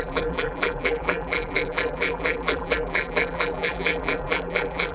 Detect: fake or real fake